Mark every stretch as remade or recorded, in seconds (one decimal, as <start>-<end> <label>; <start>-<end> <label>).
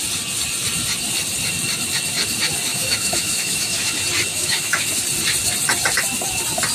0.0-2.7 recorded; 2.7-3.9 remade; 3.9-4.3 recorded; 4.3-4.9 remade; 4.9-6.7 recorded